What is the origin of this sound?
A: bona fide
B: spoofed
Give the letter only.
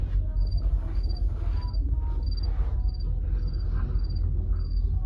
A